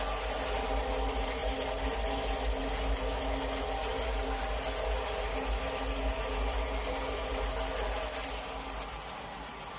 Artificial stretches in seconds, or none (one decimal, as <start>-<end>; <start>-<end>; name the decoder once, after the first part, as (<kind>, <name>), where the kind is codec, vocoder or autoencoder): none